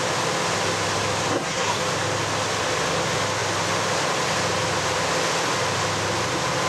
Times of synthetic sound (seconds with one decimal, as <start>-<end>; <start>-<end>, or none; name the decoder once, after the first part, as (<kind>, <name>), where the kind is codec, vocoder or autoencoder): 1.3-1.8 (codec, SNAC)